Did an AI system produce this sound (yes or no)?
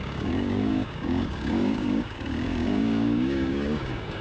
yes